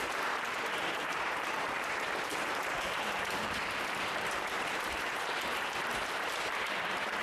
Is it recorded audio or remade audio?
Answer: remade